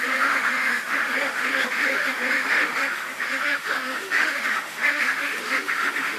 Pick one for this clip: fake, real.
fake